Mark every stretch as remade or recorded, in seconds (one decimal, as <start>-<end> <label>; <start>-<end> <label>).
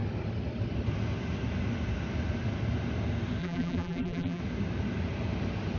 0.0-3.4 recorded; 3.4-4.4 remade; 4.4-5.8 recorded